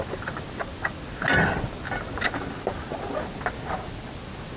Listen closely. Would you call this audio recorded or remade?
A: recorded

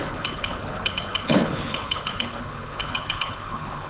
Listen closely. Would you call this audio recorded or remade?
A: remade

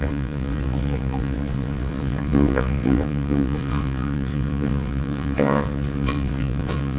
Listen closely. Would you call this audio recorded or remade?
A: remade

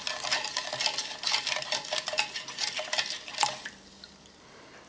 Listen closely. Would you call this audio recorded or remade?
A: recorded